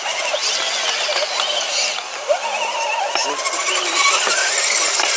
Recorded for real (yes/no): yes